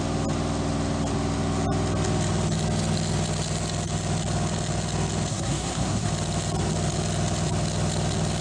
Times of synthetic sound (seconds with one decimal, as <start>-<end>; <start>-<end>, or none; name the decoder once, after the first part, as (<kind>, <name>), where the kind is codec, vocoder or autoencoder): 5.3-6.1 (codec, SNAC)